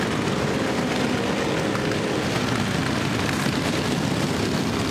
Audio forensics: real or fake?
real